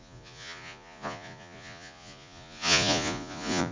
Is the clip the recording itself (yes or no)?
no